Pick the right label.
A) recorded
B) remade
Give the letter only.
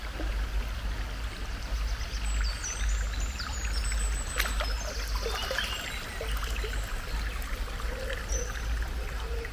A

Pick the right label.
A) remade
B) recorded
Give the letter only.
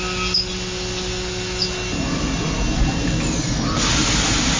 B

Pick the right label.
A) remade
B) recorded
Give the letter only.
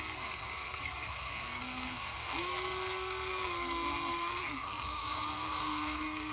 A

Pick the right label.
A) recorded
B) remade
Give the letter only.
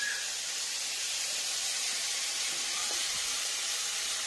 A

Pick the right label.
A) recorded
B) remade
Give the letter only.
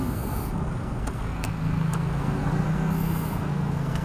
B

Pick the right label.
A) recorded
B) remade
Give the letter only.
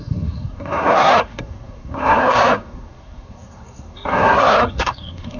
B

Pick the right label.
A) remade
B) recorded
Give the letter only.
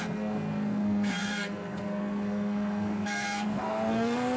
A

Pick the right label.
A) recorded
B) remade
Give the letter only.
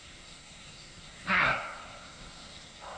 B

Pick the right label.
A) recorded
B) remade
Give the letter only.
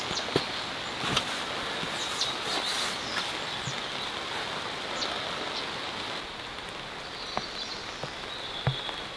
A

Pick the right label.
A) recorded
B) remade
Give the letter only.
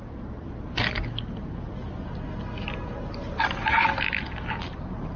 A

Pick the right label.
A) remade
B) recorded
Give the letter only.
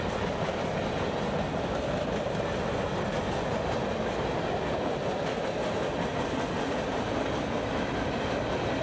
B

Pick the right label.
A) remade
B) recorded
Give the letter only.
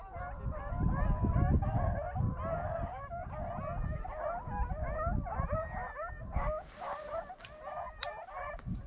B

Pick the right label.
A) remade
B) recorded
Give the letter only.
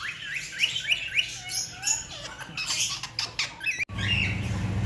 B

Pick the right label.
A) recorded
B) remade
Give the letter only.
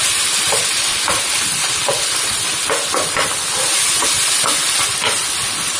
A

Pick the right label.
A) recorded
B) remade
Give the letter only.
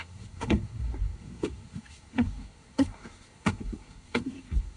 B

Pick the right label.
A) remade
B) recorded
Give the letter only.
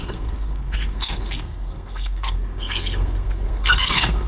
A